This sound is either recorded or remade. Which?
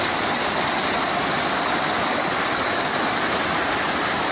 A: recorded